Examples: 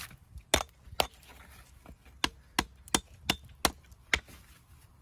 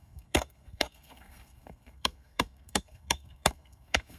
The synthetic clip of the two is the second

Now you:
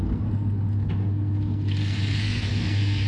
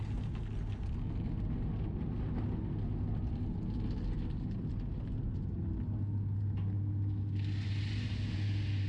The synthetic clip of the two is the first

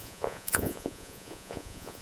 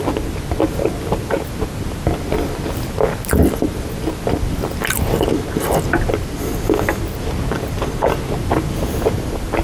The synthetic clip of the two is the first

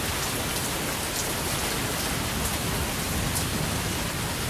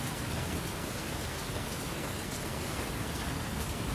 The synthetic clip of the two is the second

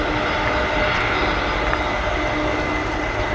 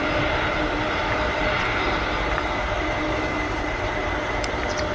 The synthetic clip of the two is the second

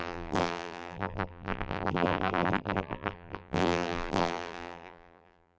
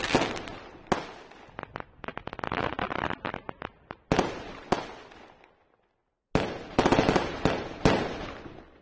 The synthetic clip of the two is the first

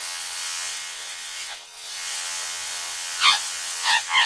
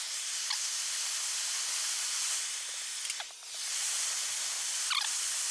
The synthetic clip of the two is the first